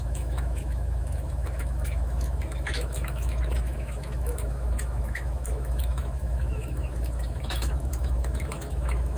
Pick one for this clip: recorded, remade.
remade